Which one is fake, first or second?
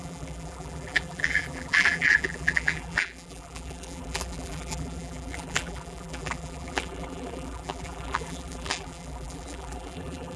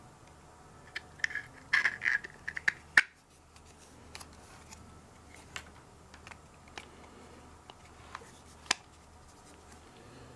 first